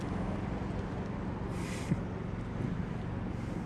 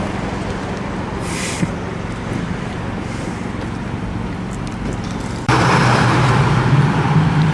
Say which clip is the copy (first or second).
second